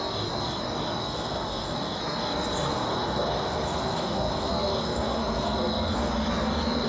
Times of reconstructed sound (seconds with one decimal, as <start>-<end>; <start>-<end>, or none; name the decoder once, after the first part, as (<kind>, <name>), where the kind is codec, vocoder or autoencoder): 1.0-2.0 (codec, SNAC); 2.7-6.1